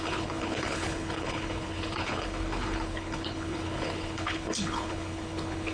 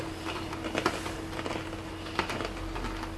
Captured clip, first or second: second